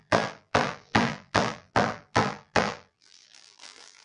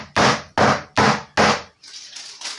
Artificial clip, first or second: first